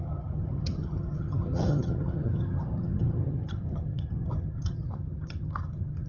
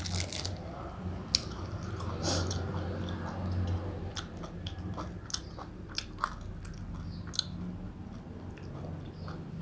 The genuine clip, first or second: second